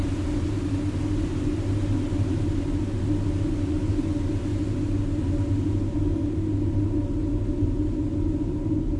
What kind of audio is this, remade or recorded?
recorded